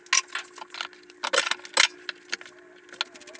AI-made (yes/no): no